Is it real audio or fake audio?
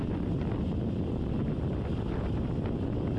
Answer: real